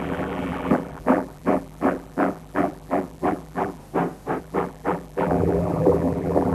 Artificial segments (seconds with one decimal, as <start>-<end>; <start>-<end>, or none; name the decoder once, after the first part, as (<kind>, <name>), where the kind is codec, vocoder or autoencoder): 0.0-3.8 (vocoder, BigVGAN v2); 4.4-6.5